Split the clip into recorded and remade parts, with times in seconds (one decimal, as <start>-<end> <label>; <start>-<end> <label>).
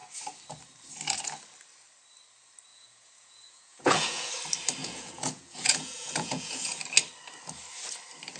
0.0-2.7 recorded; 2.7-4.3 remade; 4.3-4.8 recorded; 4.8-6.8 remade; 6.8-8.4 recorded